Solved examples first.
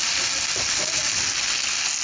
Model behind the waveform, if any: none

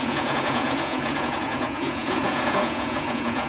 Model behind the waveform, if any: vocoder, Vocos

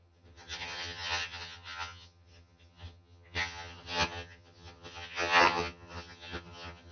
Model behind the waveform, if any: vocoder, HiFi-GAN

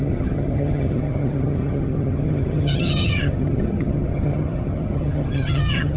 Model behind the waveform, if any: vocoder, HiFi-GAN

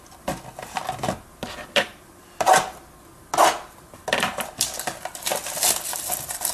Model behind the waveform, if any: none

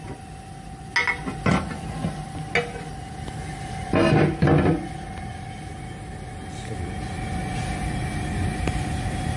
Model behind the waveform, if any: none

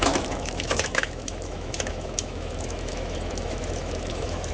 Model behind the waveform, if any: autoencoder, DAC-VAE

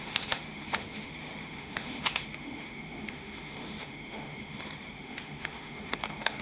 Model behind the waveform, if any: autoencoder, DAC-VAE